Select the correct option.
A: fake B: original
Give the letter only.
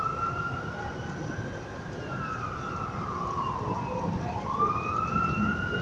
A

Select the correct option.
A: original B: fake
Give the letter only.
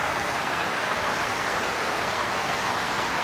B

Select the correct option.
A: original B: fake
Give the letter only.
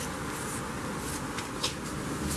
A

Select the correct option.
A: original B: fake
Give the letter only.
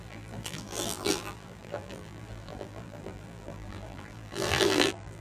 B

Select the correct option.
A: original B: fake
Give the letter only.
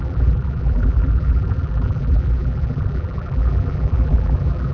B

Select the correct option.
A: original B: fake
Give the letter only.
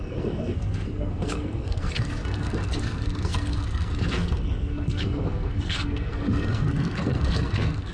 B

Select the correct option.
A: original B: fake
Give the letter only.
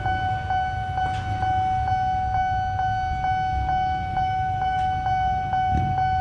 A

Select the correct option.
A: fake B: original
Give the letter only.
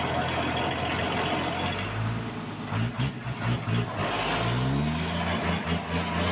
B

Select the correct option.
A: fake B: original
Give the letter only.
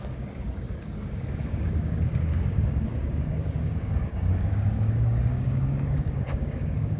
A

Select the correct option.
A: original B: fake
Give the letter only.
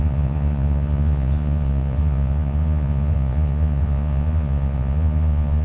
B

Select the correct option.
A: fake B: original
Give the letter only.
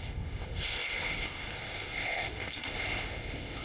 A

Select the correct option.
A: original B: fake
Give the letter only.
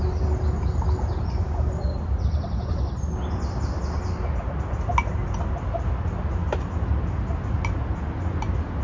A